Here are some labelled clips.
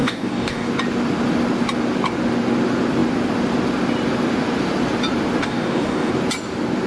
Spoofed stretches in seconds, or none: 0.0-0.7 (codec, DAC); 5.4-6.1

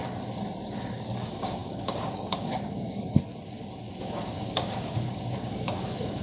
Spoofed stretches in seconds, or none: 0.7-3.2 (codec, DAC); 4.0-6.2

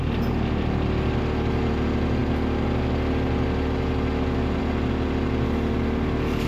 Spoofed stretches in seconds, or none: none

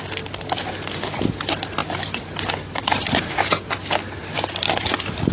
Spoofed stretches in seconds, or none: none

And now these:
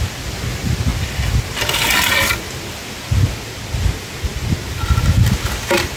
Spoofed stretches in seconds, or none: none

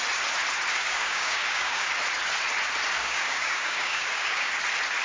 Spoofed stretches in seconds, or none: 0.7-1.9 (codec, DAC); 3.0-4.5

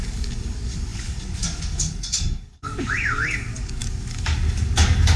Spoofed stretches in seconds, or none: 0.0-5.2 (codec, DAC)